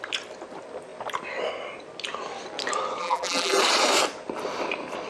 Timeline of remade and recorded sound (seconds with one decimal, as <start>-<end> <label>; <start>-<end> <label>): 0.0-3.0 recorded; 3.0-3.6 remade; 3.6-5.1 recorded